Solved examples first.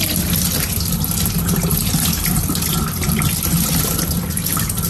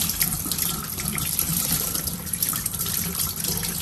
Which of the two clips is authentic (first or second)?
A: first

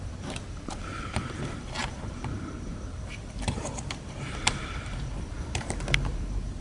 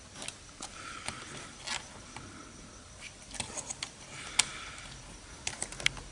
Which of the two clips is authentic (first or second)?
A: second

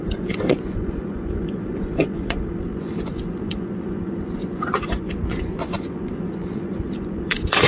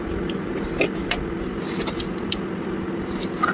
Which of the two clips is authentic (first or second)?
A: second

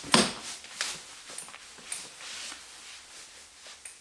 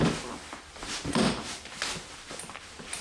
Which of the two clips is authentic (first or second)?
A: first